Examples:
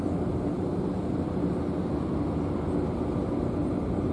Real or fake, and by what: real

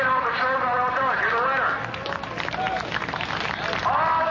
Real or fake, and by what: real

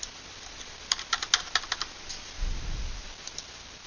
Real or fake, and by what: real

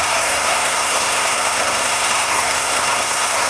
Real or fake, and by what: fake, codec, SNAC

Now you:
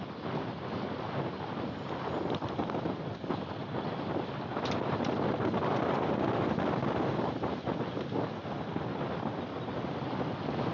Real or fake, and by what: real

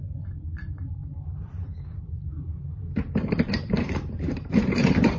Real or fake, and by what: fake, vocoder, BigVGAN v2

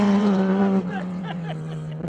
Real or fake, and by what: fake, vocoder, WaveNeXt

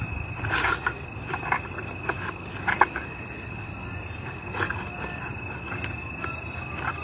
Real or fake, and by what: real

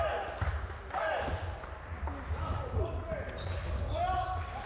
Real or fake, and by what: real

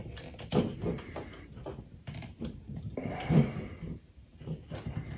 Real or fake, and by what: fake, vocoder, BigVGAN v2